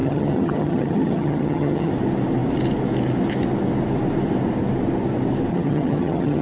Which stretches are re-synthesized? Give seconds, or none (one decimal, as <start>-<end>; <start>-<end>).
0.0-1.9; 5.5-6.4